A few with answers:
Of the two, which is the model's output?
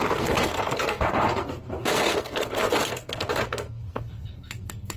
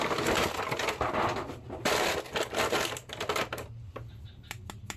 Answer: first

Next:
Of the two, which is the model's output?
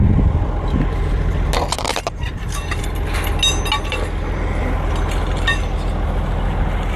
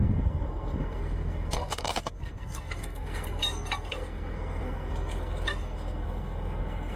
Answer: second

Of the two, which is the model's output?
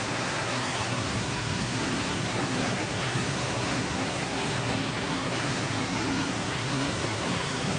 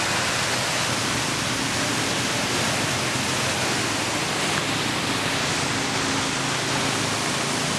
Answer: first